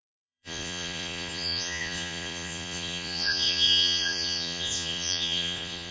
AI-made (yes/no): yes